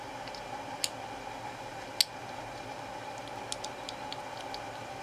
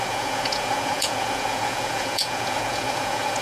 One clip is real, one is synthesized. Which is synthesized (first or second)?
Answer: second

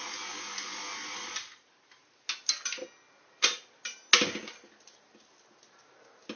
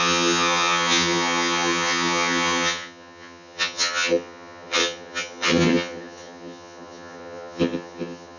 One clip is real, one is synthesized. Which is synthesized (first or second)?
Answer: second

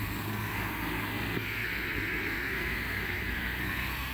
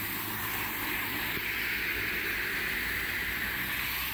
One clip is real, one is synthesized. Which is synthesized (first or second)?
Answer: first